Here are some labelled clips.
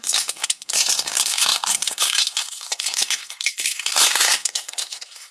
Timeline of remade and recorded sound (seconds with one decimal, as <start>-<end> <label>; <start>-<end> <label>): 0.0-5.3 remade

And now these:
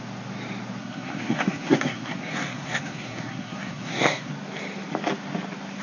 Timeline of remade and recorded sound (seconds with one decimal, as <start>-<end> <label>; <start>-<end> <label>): 0.0-0.8 recorded; 0.8-4.3 remade; 4.3-5.8 recorded

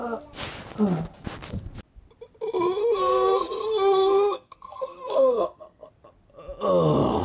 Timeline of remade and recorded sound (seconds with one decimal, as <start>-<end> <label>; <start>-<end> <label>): 0.0-2.8 recorded; 2.8-5.9 remade; 5.9-7.2 recorded

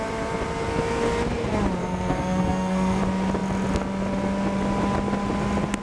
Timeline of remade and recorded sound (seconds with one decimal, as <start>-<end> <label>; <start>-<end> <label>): 0.0-1.8 recorded; 1.8-3.0 remade; 3.0-5.8 recorded

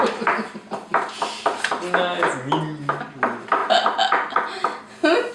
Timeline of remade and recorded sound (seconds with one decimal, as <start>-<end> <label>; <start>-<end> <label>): 0.0-5.3 recorded